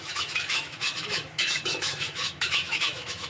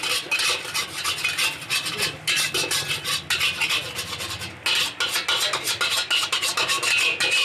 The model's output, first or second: first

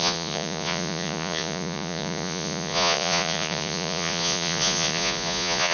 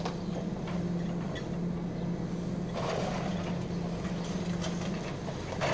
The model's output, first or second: first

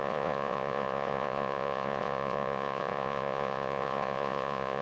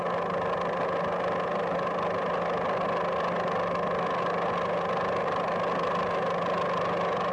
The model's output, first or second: first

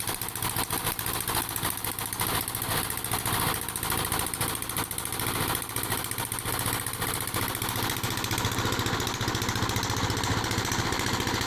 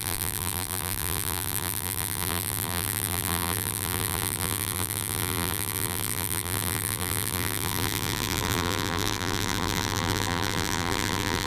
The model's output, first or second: second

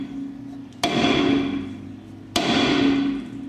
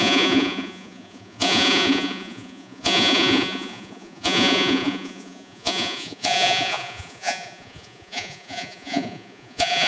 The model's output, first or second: second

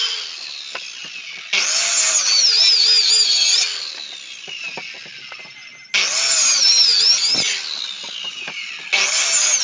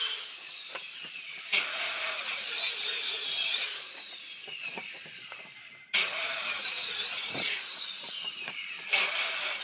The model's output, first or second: second